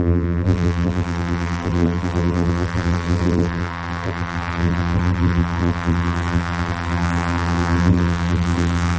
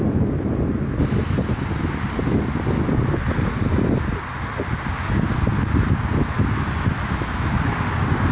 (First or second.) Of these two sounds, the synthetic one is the first